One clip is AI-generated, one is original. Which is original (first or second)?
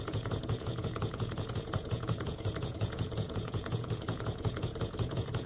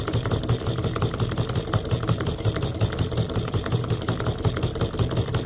second